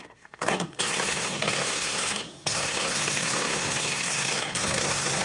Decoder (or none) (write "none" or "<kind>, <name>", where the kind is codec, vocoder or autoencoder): codec, SNAC